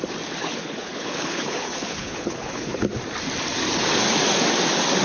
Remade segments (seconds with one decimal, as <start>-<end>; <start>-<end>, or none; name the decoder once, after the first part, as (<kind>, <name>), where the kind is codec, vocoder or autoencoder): 0.4-2.9 (codec, HILCodec)